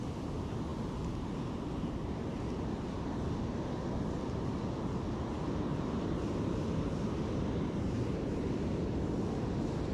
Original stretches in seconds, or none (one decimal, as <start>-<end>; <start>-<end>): 0.0-5.7; 8.5-9.9